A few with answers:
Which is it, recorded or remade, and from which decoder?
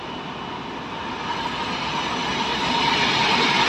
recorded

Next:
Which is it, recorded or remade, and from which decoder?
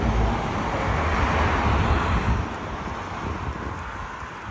recorded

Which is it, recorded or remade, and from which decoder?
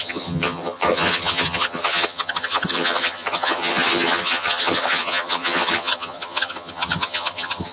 remade, vocoder, HiFi-GAN